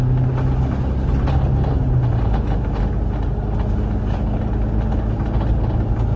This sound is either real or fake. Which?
real